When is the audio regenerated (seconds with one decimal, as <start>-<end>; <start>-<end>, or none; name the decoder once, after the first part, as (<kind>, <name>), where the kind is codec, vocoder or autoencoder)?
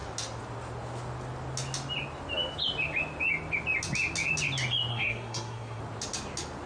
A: 4.9-5.8 (codec, SNAC)